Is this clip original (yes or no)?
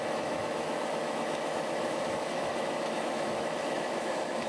no